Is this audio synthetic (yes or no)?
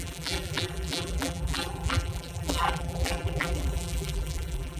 yes